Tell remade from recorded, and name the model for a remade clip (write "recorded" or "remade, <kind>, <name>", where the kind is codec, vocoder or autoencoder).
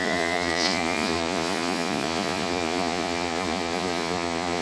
remade, vocoder, Vocos